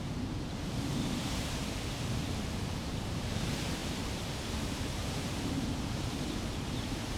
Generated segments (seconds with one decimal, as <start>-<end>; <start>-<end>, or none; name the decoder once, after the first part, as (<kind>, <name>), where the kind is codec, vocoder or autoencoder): 0.0-3.8 (vocoder, BigVGAN v2); 4.6-7.2